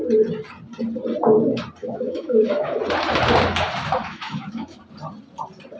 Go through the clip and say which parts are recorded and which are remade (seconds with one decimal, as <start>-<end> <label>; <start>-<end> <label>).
0.0-1.8 recorded; 1.8-2.8 remade; 2.8-4.0 recorded; 4.0-4.8 remade; 4.8-5.8 recorded